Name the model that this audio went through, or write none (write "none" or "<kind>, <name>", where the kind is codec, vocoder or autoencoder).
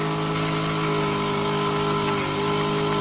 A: none